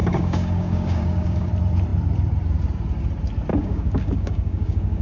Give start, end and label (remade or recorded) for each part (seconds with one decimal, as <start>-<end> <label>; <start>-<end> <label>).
0.0-1.5 remade; 1.5-3.5 recorded; 3.5-5.0 remade